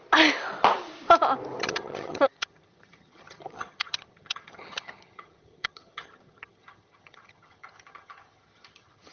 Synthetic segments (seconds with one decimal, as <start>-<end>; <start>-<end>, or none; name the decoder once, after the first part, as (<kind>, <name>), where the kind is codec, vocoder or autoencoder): 1.6-9.1 (vocoder, HiFi-GAN)